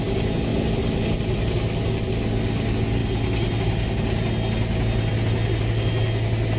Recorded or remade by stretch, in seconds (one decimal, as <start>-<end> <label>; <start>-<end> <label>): 0.0-6.6 recorded